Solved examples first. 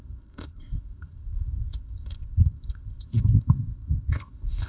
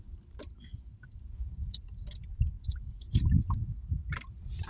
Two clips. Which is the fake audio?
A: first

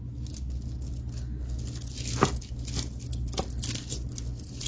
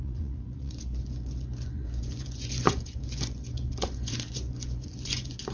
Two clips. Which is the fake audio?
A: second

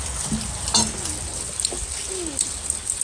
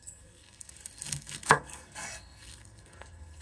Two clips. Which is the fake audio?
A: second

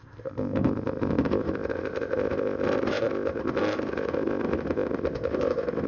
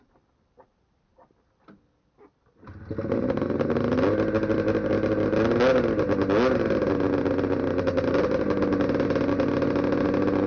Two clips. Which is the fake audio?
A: first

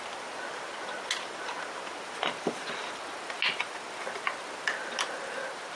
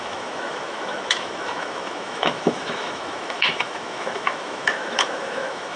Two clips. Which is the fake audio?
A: second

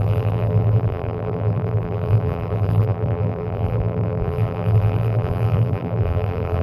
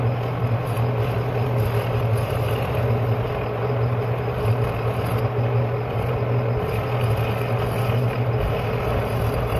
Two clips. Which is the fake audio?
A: first